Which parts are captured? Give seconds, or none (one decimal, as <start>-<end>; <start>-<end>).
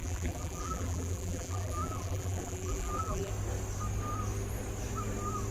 3.3-5.5